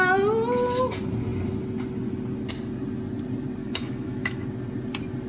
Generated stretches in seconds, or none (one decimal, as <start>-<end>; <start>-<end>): 3.6-4.4